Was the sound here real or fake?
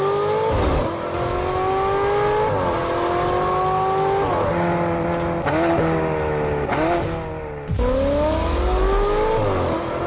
real